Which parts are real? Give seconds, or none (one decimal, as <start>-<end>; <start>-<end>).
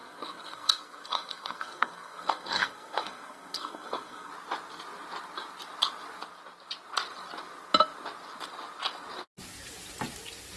4.3-10.6